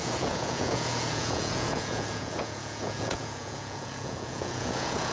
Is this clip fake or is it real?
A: fake